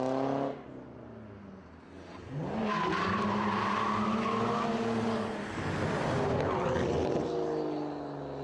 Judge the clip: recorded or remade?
recorded